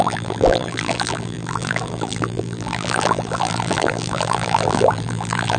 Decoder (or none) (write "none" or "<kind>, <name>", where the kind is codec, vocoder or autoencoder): vocoder, BigVGAN v2